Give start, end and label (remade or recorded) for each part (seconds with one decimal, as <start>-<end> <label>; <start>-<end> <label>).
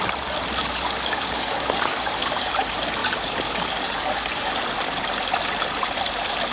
0.0-0.6 recorded; 0.6-2.5 remade; 2.5-3.0 recorded; 3.0-4.5 remade; 4.5-6.5 recorded